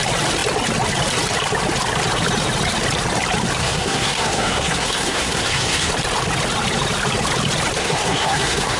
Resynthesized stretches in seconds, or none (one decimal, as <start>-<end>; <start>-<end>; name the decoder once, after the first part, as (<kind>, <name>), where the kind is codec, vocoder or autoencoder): 3.6-5.9 (codec, SNAC); 7.8-8.8